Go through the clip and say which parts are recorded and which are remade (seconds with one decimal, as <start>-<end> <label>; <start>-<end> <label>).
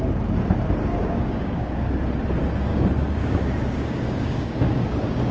0.0-0.9 recorded; 0.9-1.9 remade; 1.9-2.7 recorded; 2.7-5.3 remade